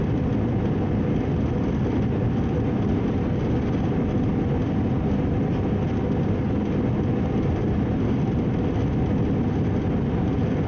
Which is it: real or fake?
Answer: real